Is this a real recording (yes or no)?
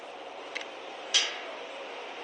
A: no